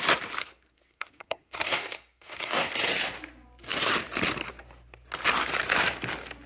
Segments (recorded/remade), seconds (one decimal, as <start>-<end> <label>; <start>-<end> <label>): 0.0-0.4 recorded; 0.4-2.7 remade; 2.7-6.5 recorded